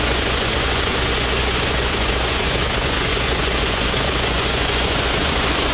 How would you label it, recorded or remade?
remade